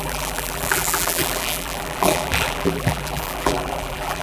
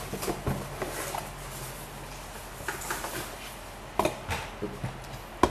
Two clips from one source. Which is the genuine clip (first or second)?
second